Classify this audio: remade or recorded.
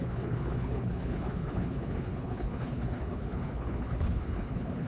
remade